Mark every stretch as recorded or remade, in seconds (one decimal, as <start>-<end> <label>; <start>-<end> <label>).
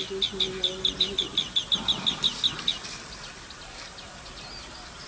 0.0-5.1 recorded